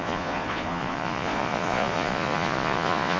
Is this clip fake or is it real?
fake